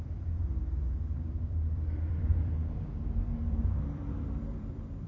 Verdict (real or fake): fake